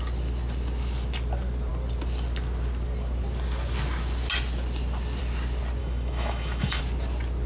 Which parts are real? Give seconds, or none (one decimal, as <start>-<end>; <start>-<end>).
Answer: 0.0-5.8; 6.8-7.5